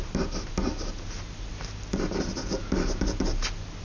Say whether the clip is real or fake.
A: real